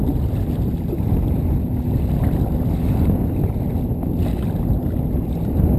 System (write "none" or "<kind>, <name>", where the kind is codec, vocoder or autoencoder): none